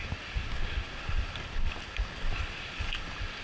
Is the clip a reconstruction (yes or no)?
no